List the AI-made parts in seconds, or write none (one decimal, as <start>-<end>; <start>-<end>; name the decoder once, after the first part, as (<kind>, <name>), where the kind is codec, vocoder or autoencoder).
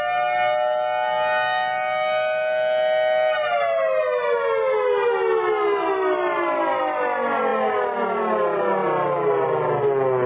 none